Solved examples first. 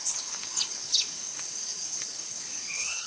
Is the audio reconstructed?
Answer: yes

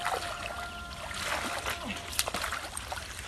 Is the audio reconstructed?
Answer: no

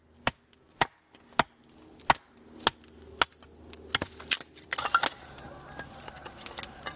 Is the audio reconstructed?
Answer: no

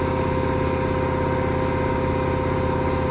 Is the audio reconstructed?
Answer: no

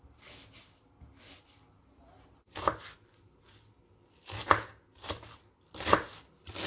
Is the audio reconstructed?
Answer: no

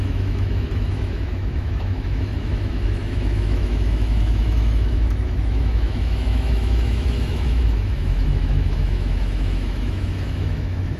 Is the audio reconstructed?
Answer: yes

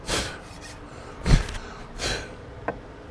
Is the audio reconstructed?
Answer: yes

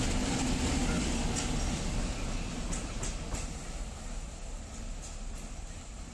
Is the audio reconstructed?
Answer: no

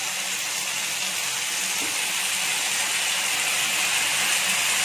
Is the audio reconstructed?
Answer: no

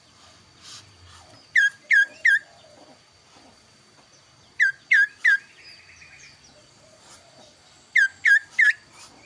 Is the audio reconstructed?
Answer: no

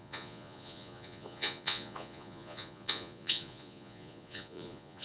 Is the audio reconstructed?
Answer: yes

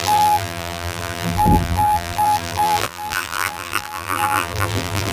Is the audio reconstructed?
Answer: yes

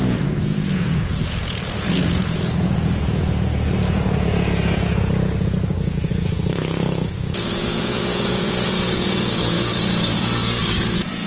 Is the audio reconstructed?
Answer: yes